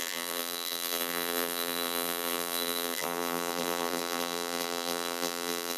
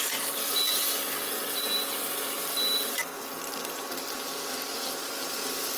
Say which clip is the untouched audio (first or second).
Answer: second